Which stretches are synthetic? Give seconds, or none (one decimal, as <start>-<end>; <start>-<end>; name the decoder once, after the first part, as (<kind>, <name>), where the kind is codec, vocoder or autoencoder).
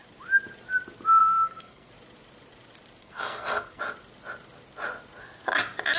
1.2-1.9 (codec, SNAC); 3.0-3.8